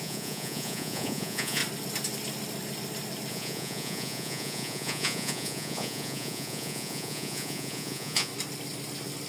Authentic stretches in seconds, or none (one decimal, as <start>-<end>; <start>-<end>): 1.6-3.3; 8.3-9.3